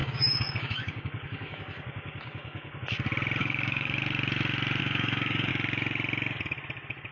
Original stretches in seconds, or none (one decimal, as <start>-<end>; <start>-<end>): 2.8-3.4; 4.0-4.8; 5.5-7.1